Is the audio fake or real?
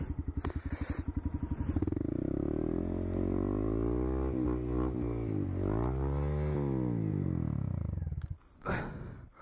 real